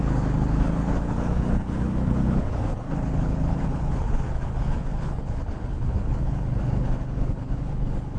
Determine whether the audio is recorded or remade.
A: remade